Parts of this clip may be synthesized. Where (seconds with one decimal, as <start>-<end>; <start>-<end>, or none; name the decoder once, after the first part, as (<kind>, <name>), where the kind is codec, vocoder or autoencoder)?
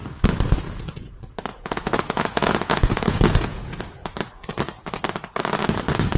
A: 1.5-3.8 (vocoder, Vocos)